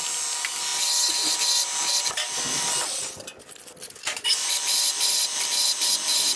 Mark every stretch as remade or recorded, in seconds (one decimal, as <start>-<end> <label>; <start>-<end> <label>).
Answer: 0.0-6.4 recorded